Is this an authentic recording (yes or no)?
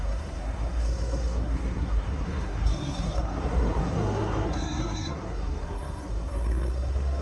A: no